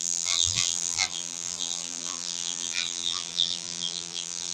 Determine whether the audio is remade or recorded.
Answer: remade